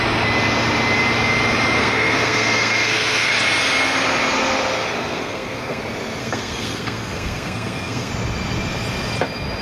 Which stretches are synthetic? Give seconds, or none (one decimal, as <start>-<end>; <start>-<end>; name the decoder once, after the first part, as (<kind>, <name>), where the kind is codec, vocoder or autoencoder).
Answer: 1.8-3.3 (codec, SNAC); 5.0-5.8; 6.2-8.1